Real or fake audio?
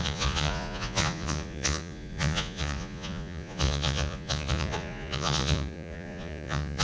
fake